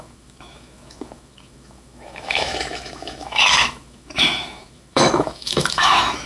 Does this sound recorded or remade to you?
remade